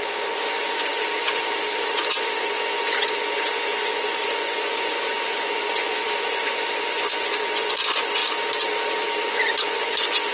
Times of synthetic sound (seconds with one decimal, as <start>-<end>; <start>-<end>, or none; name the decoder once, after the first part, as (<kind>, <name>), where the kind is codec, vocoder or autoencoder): 0.0-8.2 (vocoder, Vocos); 9.3-10.3